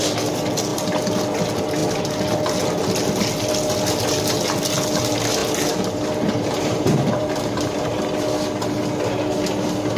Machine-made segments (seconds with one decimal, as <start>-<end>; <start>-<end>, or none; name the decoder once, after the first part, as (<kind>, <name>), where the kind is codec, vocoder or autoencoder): 5.4-8.0 (vocoder, BigVGAN v2)